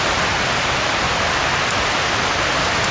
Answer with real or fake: real